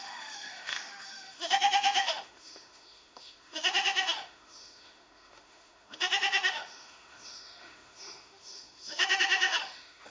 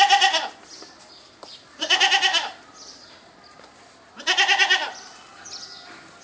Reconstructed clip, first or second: first